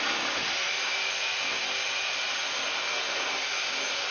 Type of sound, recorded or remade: recorded